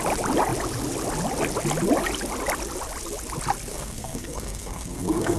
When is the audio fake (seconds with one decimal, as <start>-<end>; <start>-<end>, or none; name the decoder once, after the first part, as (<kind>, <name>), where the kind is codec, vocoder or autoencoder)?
3.7-5.4 (codec, SNAC)